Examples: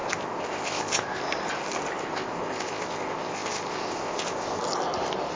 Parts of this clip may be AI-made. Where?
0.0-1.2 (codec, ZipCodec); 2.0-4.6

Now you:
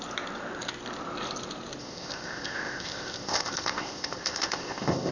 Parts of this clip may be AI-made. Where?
1.8-5.1 (codec, ZipCodec)

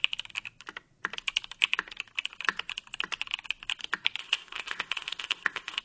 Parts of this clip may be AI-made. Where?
4.2-5.8 (codec, ZipCodec)

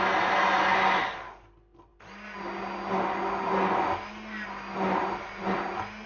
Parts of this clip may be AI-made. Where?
none

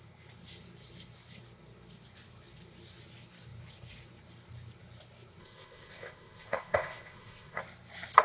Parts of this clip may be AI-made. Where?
5.4-7.6 (codec, ZipCodec)

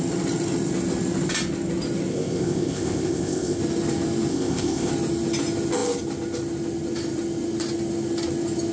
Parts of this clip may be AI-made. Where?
2.1-3.6 (codec, ZipCodec); 4.3-4.9

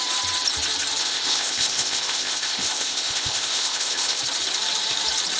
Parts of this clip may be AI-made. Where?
1.0-4.2 (codec, ZipCodec)

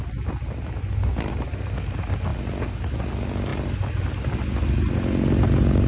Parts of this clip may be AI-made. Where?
none